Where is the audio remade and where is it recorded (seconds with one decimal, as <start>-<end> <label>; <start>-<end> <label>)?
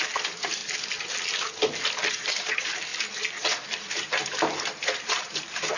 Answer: 0.0-0.6 remade; 0.6-2.1 recorded; 2.1-2.9 remade; 2.9-3.9 recorded; 3.9-5.8 remade